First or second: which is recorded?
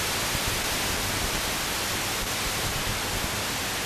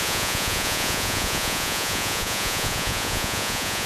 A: first